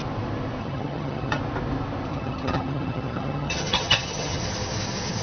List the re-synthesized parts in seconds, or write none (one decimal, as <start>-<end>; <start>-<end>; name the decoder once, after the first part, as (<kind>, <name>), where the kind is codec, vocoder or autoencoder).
0.6-1.4 (vocoder, HiFi-GAN); 2.1-4.4